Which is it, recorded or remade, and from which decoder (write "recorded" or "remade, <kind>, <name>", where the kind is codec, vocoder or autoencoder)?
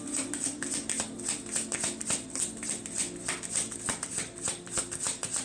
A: recorded